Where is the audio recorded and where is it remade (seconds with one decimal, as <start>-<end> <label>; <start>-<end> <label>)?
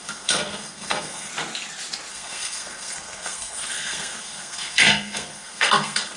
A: 0.0-1.3 remade; 1.3-2.1 recorded; 2.1-6.2 remade